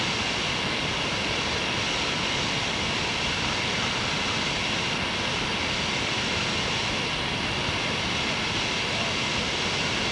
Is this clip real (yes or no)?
yes